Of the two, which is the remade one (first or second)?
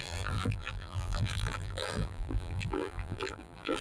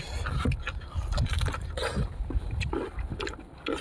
first